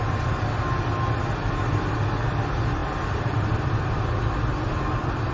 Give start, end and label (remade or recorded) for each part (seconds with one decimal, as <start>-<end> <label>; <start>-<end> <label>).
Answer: 0.0-5.3 recorded